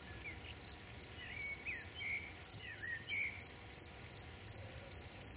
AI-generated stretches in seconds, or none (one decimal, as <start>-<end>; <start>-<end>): 2.5-3.1